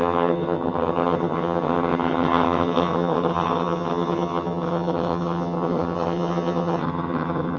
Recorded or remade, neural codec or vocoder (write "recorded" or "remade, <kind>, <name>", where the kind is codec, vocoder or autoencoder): remade, vocoder, HiFi-GAN